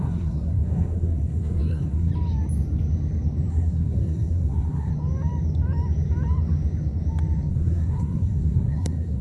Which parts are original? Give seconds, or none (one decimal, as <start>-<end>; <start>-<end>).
2.1-3.5; 4.9-7.5